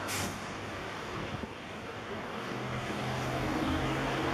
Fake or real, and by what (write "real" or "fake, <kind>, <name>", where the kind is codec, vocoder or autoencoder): fake, codec, DAC